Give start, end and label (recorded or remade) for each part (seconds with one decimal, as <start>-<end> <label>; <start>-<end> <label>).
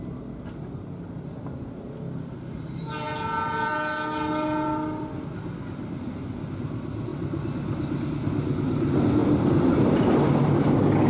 0.0-11.1 recorded